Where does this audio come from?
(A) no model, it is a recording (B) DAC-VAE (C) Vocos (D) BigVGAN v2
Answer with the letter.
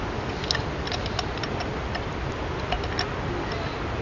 A